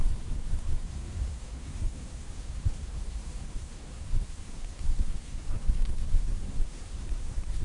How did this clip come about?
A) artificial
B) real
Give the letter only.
A